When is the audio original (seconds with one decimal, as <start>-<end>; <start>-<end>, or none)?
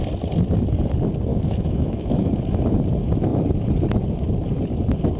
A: 0.0-1.3; 2.4-5.2